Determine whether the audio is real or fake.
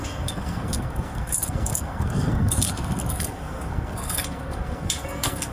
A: fake